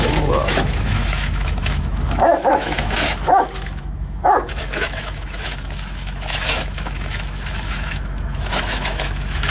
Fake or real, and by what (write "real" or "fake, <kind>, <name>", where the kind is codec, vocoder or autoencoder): fake, autoencoder, DAC-VAE